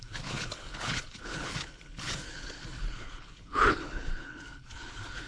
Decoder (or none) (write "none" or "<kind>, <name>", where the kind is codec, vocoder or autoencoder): codec, HILCodec